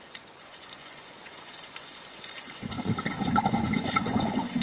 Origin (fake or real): fake